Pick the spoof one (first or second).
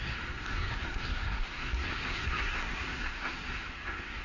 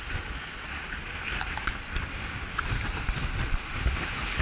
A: first